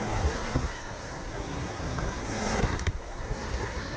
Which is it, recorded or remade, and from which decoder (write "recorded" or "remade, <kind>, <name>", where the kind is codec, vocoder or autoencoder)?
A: remade, codec, SNAC